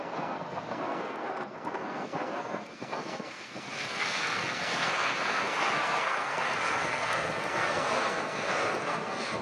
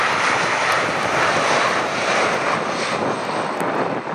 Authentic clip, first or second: second